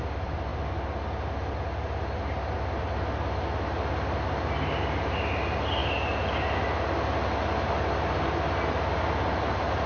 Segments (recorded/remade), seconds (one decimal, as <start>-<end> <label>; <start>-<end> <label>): 0.0-9.9 recorded